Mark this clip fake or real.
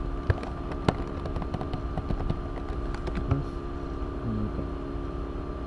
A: real